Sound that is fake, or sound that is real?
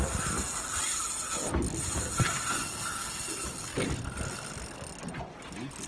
real